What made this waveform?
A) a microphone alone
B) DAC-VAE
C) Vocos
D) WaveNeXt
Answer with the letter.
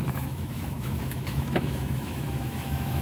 B